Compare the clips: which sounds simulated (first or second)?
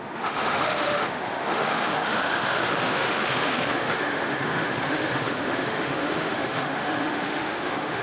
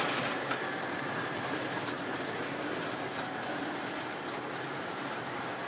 first